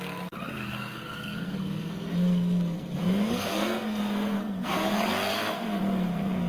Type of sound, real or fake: fake